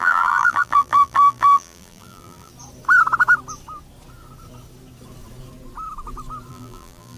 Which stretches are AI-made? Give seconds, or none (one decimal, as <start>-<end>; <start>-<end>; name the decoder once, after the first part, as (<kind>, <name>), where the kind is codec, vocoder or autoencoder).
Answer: 0.0-2.5 (vocoder, BigVGAN v2); 6.5-7.2